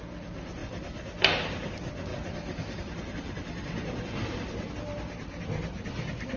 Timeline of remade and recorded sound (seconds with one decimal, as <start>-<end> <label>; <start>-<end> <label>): 0.0-0.6 recorded; 0.6-1.7 remade; 1.7-2.1 recorded; 2.1-4.7 remade; 4.7-6.4 recorded